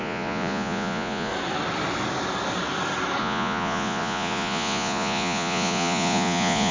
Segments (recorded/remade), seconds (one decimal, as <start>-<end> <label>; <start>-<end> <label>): 0.0-1.3 remade; 1.3-3.2 recorded; 3.2-6.7 remade